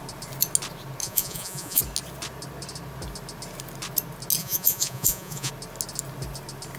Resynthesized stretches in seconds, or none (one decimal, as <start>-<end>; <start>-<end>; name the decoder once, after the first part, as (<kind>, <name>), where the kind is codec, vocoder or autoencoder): 1.0-1.8 (vocoder, Vocos); 4.4-5.5